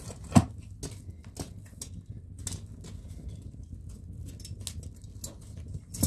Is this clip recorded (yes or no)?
yes